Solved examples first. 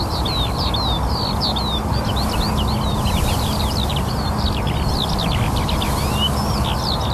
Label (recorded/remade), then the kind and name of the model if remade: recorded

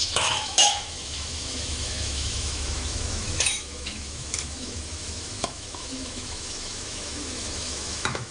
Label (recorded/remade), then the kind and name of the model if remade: remade, autoencoder, DAC-VAE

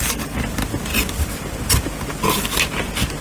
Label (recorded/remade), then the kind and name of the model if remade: recorded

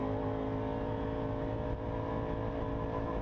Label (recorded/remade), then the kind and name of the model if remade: recorded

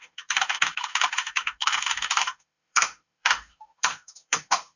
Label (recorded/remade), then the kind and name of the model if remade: remade, autoencoder, DAC-VAE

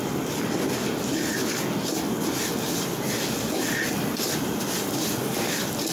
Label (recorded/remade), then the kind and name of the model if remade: recorded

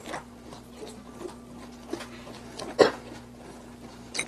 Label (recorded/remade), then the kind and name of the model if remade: recorded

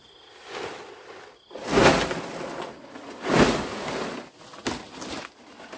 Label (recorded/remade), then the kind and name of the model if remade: recorded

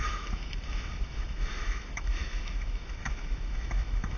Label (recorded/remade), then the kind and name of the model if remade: remade, autoencoder, DAC-VAE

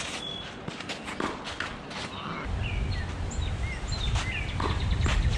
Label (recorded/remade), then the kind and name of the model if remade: recorded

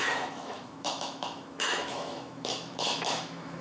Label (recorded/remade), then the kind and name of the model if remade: remade, autoencoder, DAC-VAE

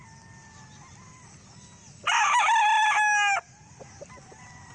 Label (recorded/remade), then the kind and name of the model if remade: recorded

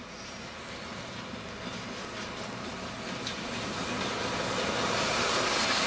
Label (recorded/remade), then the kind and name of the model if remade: recorded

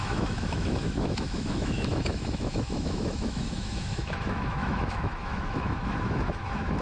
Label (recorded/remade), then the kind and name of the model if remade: remade, autoencoder, DAC-VAE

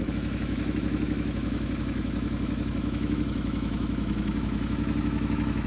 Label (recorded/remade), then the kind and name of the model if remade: remade, autoencoder, DAC-VAE